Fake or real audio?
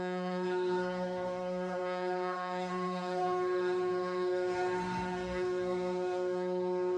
fake